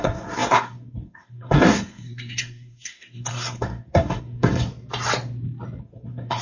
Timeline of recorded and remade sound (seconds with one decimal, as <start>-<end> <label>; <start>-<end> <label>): 0.0-4.7 remade; 4.7-5.8 recorded; 5.8-6.4 remade